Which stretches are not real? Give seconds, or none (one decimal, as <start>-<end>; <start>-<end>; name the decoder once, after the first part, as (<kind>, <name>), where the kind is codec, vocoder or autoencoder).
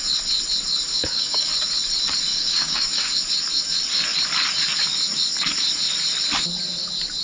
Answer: 0.9-1.5 (codec, DAC); 2.3-3.1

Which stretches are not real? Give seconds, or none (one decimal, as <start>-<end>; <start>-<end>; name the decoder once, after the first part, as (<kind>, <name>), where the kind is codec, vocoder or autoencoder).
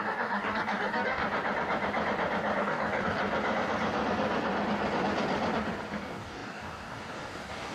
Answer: 0.0-1.2 (codec, DAC); 2.6-3.2; 6.0-7.7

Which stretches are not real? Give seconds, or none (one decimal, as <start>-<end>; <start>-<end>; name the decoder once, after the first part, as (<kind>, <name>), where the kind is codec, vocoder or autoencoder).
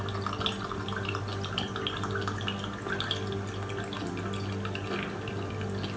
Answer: none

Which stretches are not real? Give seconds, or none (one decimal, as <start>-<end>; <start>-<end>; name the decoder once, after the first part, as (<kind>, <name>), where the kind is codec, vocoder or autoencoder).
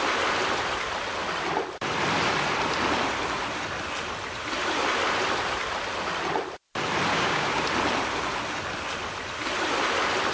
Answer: 7.1-7.6 (codec, DAC)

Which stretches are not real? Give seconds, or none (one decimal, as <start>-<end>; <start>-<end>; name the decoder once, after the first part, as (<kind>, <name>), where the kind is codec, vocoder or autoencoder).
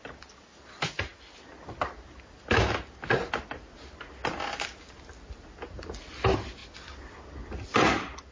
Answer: none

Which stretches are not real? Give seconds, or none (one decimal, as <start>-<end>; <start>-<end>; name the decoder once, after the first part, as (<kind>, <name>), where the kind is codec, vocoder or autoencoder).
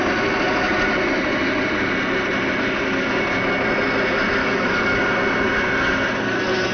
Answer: 4.4-5.0 (codec, DAC)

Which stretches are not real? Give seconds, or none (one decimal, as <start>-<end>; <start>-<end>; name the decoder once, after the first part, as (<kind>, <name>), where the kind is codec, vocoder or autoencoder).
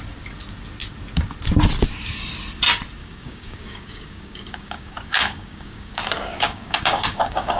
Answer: 3.0-7.6 (codec, DAC)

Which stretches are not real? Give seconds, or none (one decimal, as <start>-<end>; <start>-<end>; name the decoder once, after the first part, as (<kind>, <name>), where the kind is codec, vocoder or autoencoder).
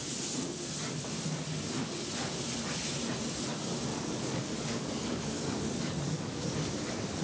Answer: 3.9-7.2 (codec, DAC)